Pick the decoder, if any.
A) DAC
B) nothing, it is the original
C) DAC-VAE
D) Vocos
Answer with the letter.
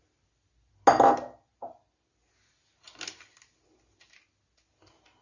B